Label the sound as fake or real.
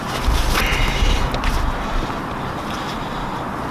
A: fake